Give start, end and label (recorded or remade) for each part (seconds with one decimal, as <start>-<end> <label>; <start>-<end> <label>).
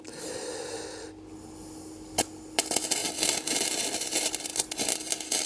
0.0-5.5 recorded